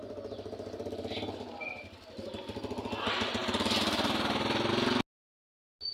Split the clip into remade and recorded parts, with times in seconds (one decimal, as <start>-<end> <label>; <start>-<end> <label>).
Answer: 0.0-3.4 recorded; 3.4-4.7 remade; 4.7-5.9 recorded